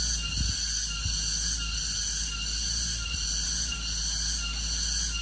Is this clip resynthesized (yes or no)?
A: no